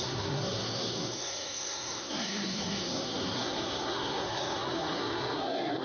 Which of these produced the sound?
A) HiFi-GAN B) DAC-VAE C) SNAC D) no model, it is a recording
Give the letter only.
C